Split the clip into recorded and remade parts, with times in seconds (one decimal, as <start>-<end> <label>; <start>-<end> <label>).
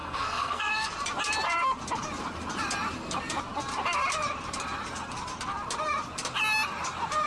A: 0.0-0.9 remade; 0.9-7.3 recorded